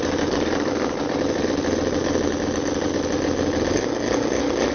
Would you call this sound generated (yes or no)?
no